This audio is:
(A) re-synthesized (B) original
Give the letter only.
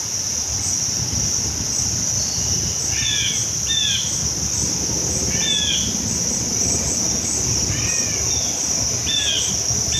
B